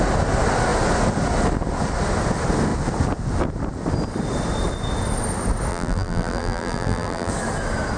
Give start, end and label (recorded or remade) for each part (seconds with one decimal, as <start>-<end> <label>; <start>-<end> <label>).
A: 0.0-5.7 recorded; 5.7-7.3 remade; 7.3-8.0 recorded